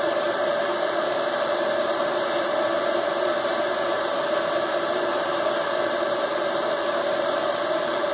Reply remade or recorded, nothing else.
remade